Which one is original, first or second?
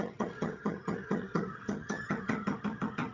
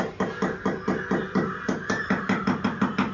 second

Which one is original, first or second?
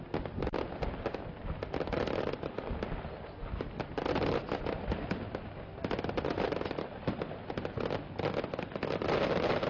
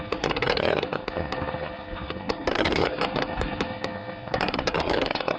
first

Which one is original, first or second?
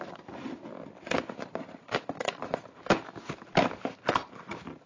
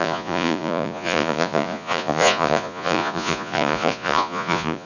first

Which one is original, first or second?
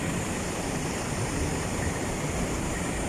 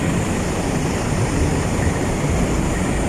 second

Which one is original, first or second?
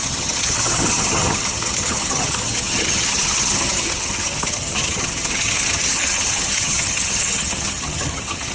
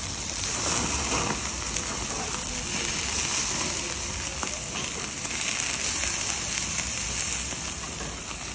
second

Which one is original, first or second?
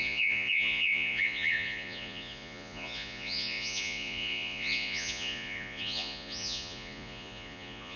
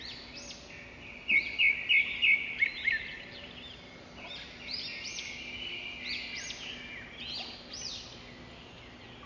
second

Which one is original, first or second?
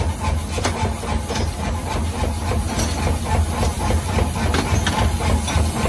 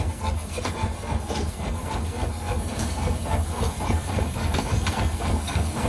first